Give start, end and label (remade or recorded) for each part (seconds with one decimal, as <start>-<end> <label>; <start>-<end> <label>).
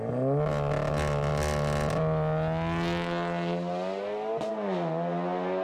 0.0-5.6 recorded